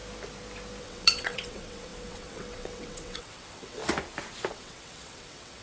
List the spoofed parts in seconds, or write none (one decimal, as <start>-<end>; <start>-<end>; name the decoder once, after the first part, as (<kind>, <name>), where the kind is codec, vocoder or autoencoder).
0.8-3.8 (vocoder, WaveNeXt); 4.5-5.6

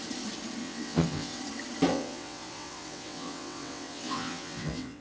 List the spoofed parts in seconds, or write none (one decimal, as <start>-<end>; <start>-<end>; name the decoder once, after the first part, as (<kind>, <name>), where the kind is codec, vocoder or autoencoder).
0.6-1.4 (vocoder, WaveNeXt); 1.9-5.0

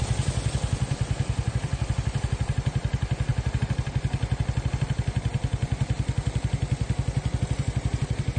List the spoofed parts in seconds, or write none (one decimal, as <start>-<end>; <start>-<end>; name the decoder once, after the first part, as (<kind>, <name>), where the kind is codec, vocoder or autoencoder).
none

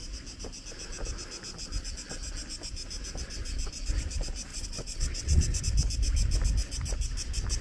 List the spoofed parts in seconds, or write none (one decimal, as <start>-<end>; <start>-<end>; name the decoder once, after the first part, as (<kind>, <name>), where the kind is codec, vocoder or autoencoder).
4.5-5.6 (vocoder, WaveNeXt)

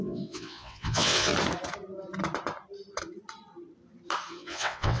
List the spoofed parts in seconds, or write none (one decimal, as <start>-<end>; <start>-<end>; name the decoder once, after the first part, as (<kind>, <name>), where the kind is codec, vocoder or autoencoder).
0.0-1.3 (vocoder, WaveNeXt); 4.3-5.0

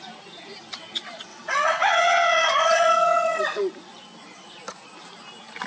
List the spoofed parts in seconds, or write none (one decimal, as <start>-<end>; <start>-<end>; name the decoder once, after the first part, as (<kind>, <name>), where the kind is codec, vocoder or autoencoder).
1.3-3.4 (vocoder, WaveNeXt)

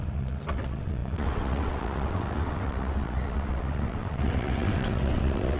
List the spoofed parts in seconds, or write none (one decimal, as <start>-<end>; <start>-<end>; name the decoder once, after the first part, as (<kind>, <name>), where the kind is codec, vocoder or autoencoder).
0.0-5.6 (vocoder, WaveNeXt)

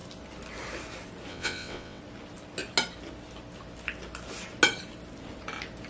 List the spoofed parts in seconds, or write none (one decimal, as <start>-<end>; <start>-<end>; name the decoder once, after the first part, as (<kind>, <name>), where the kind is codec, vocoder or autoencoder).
1.3-2.0 (vocoder, WaveNeXt)